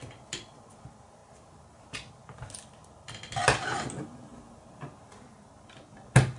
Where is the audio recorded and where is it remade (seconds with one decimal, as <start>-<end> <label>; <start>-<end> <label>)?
0.0-1.2 recorded; 1.2-2.1 remade; 2.1-4.3 recorded; 4.3-5.5 remade; 5.5-6.4 recorded